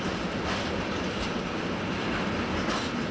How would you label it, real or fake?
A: real